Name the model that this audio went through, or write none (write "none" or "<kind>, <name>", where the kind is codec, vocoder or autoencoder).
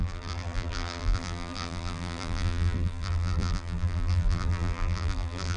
vocoder, BigVGAN v2